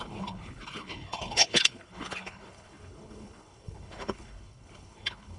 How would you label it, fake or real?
fake